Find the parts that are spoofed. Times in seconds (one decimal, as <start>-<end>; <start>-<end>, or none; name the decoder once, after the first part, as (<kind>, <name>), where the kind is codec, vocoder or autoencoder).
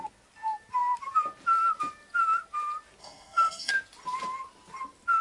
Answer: 3.0-3.7 (codec, SNAC)